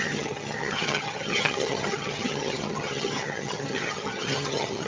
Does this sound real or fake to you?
fake